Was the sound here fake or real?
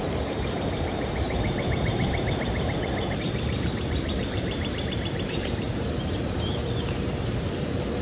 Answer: fake